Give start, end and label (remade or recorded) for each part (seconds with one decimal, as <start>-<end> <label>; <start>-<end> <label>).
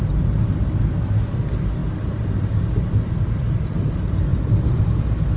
0.0-1.8 recorded; 1.8-3.6 remade; 3.6-4.3 recorded; 4.3-5.4 remade